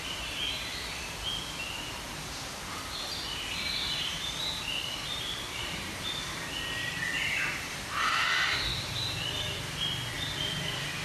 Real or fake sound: fake